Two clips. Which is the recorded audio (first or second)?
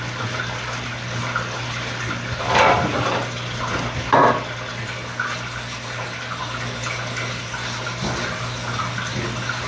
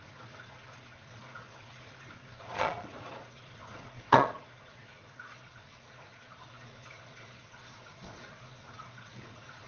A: first